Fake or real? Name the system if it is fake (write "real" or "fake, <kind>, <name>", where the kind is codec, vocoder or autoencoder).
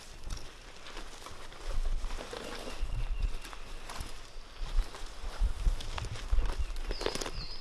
real